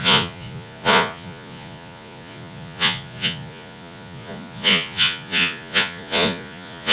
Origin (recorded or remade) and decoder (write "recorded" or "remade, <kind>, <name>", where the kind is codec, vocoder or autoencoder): remade, vocoder, Vocos